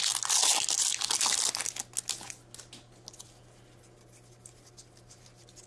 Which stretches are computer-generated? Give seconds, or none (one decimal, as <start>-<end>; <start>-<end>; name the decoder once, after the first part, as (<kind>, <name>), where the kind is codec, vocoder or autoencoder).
0.9-1.6 (vocoder, BigVGAN v2)

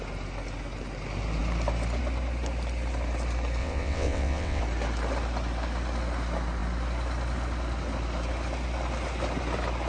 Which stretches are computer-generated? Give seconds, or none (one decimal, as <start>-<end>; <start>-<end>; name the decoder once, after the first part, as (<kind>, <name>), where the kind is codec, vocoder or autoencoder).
3.6-4.6 (vocoder, WaveNeXt)

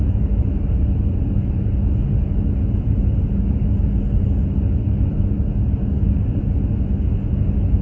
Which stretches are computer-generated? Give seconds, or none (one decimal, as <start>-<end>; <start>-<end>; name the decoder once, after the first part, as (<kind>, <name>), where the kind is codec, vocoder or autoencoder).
5.8-6.4 (codec, DAC)

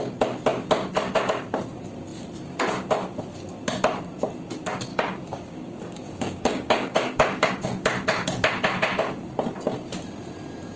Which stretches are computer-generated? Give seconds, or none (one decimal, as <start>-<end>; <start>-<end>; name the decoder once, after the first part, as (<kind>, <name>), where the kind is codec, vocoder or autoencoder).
4.9-7.5 (codec, DAC)

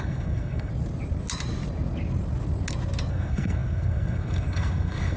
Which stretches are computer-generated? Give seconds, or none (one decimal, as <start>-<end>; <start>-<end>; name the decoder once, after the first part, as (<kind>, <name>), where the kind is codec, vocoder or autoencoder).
0.0-0.7 (codec, SNAC); 3.1-5.2

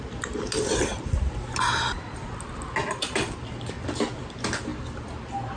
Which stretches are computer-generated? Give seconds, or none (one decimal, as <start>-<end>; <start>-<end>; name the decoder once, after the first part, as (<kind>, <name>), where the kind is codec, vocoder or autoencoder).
none

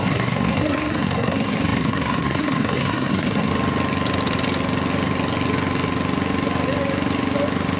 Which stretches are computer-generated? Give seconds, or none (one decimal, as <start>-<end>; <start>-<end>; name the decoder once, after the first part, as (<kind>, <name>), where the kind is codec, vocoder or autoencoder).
0.0-3.5 (codec, SNAC)